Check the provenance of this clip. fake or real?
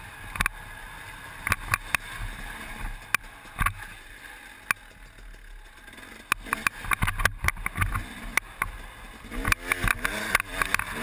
real